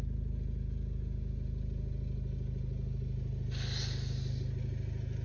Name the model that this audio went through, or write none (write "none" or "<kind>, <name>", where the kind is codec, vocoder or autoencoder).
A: none